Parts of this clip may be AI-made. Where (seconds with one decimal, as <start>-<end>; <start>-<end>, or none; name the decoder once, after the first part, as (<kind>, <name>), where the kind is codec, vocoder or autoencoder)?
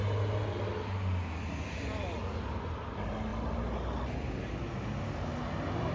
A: none